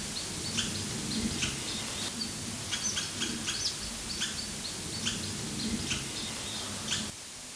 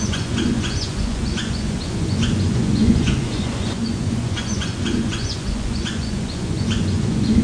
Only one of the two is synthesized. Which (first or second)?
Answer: second